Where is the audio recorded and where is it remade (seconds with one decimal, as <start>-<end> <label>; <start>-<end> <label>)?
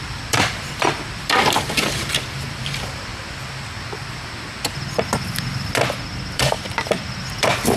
0.0-3.1 remade; 3.1-5.4 recorded; 5.4-7.8 remade